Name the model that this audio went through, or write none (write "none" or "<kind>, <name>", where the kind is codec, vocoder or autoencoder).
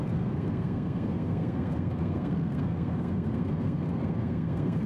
codec, SNAC